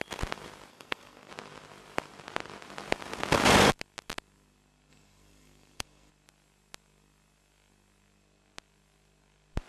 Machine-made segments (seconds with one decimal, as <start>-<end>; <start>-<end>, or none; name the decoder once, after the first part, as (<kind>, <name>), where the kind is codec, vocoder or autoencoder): 0.7-1.3 (codec, SNAC); 4.9-6.1